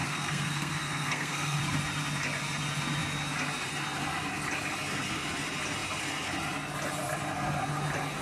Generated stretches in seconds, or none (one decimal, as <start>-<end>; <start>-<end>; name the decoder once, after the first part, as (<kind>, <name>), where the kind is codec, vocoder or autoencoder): 0.0-1.6 (codec, SNAC)